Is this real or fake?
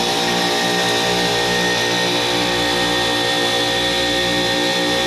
real